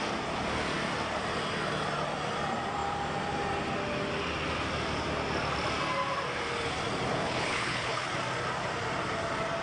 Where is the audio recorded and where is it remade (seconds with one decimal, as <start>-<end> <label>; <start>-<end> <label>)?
0.0-7.1 recorded; 7.1-8.1 remade; 8.1-9.6 recorded